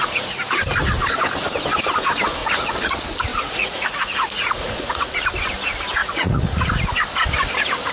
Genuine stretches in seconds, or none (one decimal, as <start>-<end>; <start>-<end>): 0.0-2.4; 2.9-3.3; 5.1-6.0; 6.7-7.9